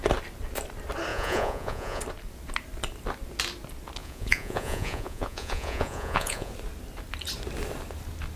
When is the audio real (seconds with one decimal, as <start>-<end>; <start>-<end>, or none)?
0.0-1.1; 2.0-4.0; 6.5-8.4